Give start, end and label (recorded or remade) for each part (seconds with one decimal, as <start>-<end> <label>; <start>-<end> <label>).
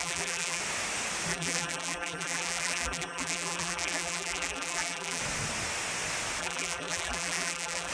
0.0-0.6 remade; 0.6-1.3 recorded; 1.3-5.2 remade; 5.2-6.4 recorded; 6.4-7.9 remade